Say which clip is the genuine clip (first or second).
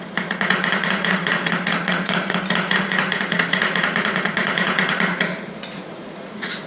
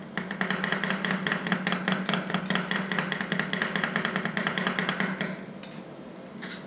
second